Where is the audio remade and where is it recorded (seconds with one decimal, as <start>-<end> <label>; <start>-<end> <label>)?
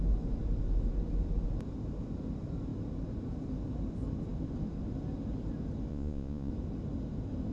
0.0-5.9 recorded; 5.9-6.5 remade; 6.5-7.5 recorded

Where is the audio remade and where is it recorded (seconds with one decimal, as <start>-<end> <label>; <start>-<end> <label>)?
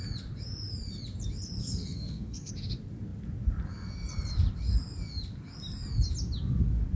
0.0-1.6 recorded; 1.6-2.5 remade; 2.5-6.9 recorded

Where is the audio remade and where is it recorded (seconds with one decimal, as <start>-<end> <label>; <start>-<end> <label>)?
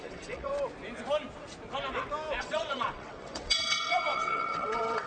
0.0-0.5 remade; 0.5-2.4 recorded; 2.4-5.1 remade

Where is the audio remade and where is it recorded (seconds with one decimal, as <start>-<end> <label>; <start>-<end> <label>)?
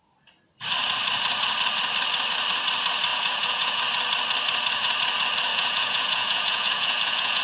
0.0-3.1 recorded; 3.1-3.8 remade; 3.8-5.5 recorded; 5.5-7.4 remade